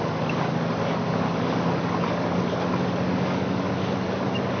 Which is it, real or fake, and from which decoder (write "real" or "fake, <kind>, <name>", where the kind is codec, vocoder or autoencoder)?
fake, codec, DAC